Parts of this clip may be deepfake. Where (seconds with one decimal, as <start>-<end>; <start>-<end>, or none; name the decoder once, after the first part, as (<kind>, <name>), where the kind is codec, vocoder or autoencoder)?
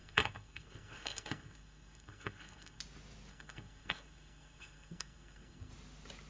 0.0-2.8 (codec, SNAC); 3.3-5.7